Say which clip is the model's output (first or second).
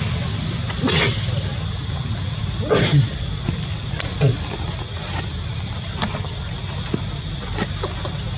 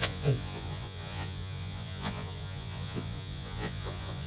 second